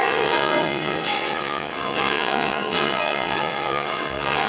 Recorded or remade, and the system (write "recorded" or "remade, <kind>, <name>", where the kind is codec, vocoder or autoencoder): remade, vocoder, WaveNeXt